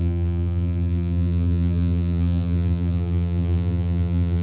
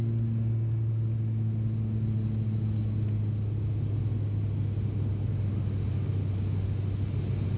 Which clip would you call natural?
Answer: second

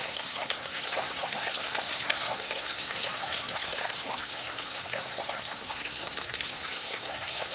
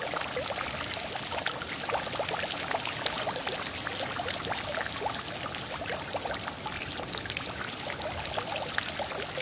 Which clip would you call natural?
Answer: second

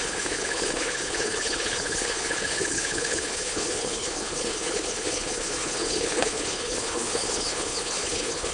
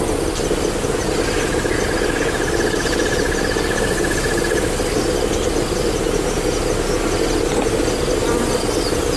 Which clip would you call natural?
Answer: second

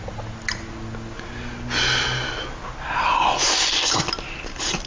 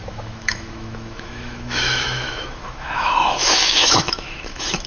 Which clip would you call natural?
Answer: first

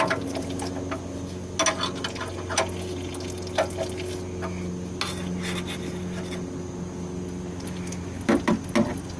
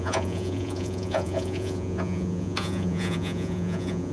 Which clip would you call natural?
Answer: first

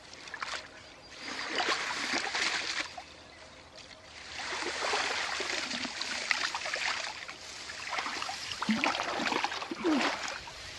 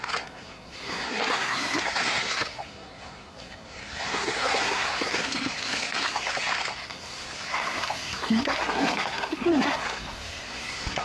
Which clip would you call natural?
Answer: first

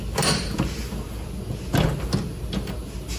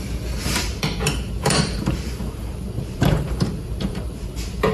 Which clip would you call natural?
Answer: first